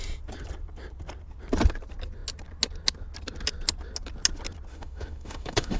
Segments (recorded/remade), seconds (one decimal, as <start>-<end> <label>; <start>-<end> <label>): 0.0-4.7 recorded; 4.7-5.8 remade